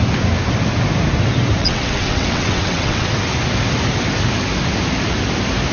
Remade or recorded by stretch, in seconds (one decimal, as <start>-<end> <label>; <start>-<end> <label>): 0.0-1.6 recorded; 1.6-3.1 remade; 3.1-5.7 recorded